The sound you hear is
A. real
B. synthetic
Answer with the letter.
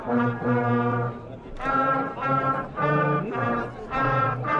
B